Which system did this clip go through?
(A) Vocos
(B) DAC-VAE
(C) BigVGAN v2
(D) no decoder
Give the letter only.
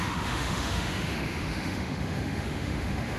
B